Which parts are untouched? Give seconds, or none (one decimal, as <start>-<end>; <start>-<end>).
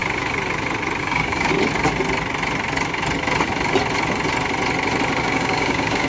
0.0-1.0; 1.5-5.2